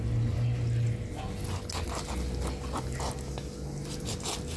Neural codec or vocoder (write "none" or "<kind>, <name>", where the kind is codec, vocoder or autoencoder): none